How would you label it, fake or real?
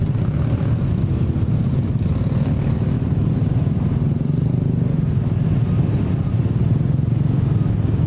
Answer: real